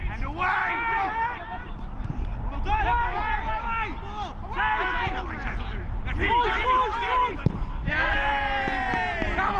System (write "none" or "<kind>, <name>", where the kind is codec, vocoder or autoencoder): none